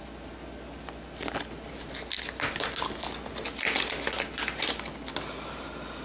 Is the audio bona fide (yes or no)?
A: yes